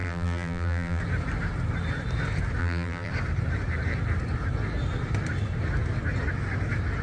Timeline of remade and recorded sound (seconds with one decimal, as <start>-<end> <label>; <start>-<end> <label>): 0.0-1.0 remade; 1.0-2.6 recorded; 2.6-3.1 remade; 3.1-7.0 recorded